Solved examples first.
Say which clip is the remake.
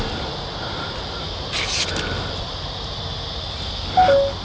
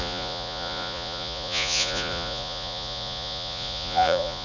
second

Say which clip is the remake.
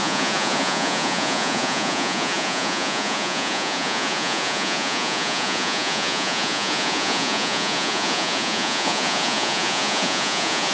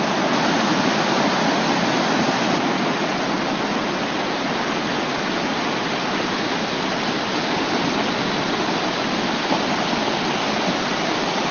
first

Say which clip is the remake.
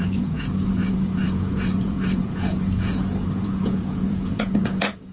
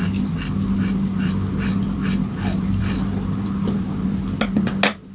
first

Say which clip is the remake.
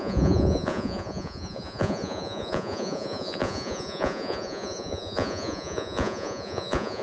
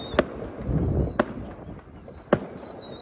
first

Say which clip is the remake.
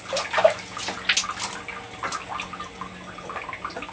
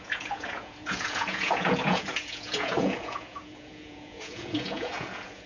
second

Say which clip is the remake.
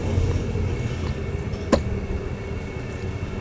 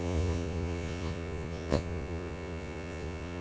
second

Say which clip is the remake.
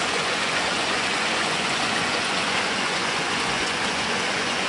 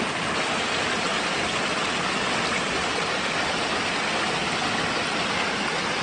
first